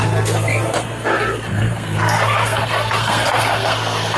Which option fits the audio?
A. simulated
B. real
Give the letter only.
A